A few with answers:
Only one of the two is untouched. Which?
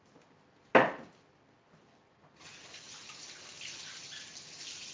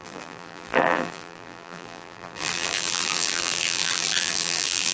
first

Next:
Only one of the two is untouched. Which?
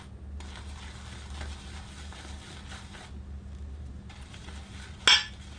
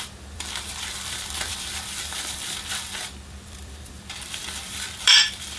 first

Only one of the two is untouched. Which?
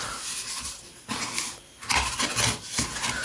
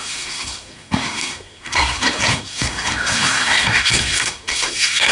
first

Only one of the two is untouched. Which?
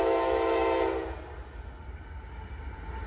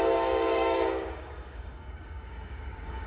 first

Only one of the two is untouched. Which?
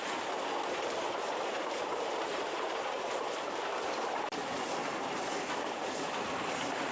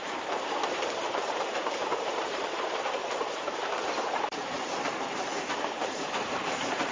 first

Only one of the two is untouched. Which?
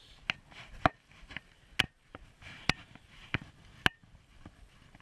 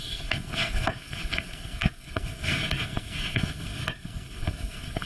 first